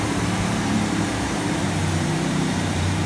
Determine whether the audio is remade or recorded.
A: remade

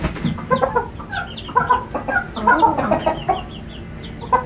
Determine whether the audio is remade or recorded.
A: recorded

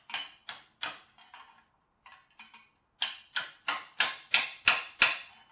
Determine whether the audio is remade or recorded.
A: recorded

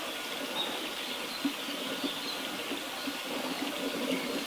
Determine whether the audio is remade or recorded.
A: recorded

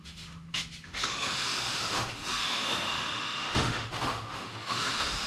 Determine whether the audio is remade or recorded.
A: remade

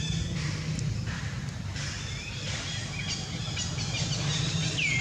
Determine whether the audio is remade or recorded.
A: recorded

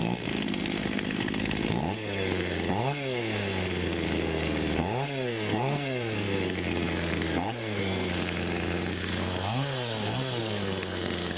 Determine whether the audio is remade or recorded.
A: remade